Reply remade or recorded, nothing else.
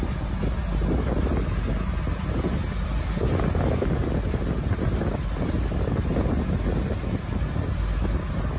recorded